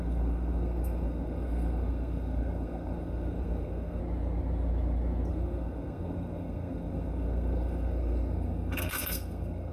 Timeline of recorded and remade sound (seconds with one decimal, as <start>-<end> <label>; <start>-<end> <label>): 0.0-4.0 remade; 4.0-5.3 recorded; 5.3-9.7 remade